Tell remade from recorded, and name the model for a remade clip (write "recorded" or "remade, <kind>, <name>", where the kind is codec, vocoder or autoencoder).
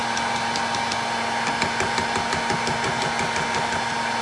recorded